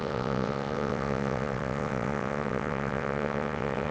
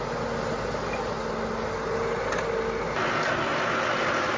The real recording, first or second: second